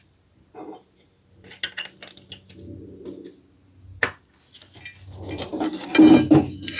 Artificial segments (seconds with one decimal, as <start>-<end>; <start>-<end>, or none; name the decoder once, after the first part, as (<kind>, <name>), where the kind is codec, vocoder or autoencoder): none